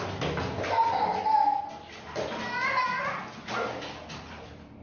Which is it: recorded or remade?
recorded